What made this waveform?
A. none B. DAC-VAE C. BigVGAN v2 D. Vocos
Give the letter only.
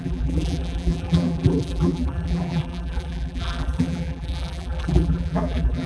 C